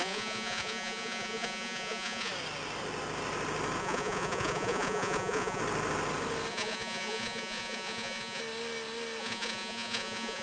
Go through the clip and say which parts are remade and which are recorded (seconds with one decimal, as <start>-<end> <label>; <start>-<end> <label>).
0.0-2.3 remade; 2.3-3.8 recorded; 3.8-5.6 remade; 5.6-6.5 recorded; 6.5-8.4 remade; 8.4-9.2 recorded; 9.2-10.4 remade